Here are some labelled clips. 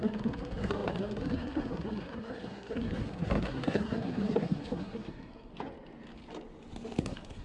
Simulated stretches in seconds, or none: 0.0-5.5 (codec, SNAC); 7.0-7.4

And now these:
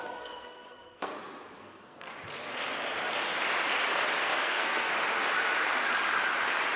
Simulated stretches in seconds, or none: 0.0-1.1 (codec, SNAC); 1.6-2.1; 4.2-4.9

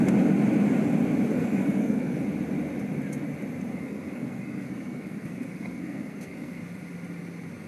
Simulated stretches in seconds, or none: 1.3-2.2 (codec, SNAC); 3.7-6.6

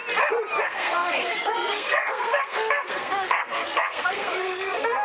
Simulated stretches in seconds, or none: 0.6-5.0 (codec, SNAC)

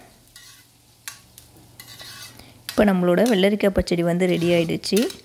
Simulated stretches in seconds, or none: none

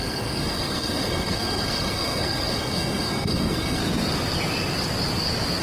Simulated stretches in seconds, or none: 0.0-3.8 (codec, SNAC)

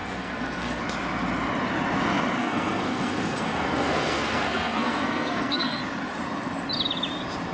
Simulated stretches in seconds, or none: 0.0-0.8 (codec, SNAC); 2.4-5.8

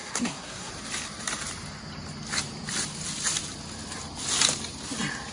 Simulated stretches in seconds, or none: 0.0-0.7 (codec, SNAC)